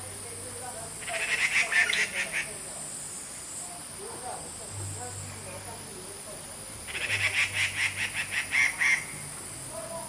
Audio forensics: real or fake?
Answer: real